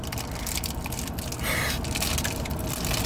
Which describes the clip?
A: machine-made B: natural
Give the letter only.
B